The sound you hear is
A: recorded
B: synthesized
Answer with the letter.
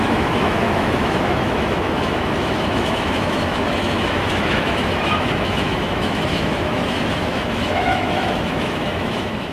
B